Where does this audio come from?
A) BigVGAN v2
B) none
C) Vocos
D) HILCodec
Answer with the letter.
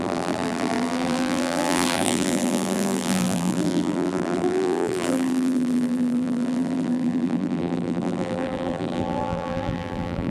A